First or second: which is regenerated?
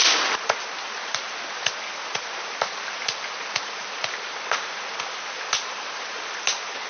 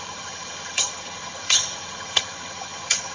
second